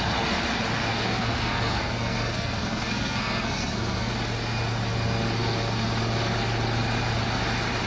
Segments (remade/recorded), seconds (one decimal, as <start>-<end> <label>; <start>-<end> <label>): 0.0-0.9 recorded; 0.9-4.1 remade; 4.1-7.9 recorded